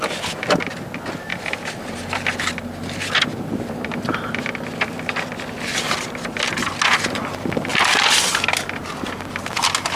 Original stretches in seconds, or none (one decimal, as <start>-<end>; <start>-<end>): 0.0-10.0